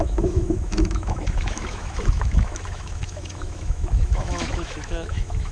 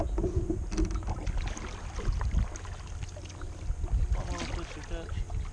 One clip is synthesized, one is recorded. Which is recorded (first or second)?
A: second